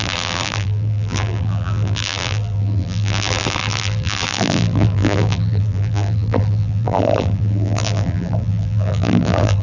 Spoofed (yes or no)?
yes